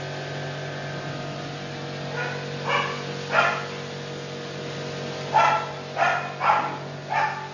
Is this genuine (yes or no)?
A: yes